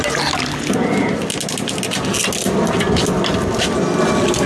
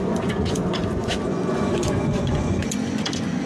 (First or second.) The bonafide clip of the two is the first